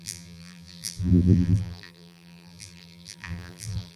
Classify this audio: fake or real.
fake